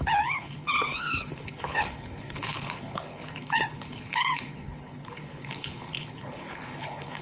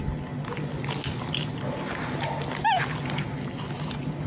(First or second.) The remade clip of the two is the first